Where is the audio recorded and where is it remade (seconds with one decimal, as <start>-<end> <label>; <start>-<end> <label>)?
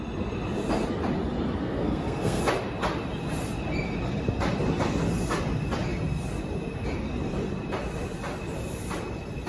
0.0-1.6 recorded; 1.6-2.4 remade; 2.4-9.5 recorded